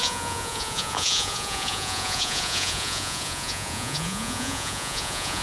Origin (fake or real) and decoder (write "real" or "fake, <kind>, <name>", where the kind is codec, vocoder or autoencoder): fake, vocoder, Vocos